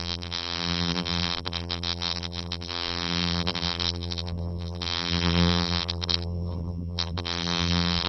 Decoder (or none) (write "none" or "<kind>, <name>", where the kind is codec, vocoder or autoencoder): vocoder, BigVGAN v2